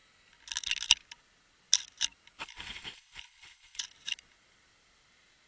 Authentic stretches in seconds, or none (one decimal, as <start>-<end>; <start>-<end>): 0.0-2.4; 3.8-5.5